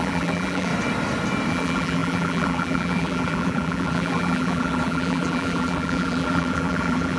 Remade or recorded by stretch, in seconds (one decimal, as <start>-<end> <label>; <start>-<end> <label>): 0.0-0.7 remade; 0.7-1.5 recorded; 1.5-7.2 remade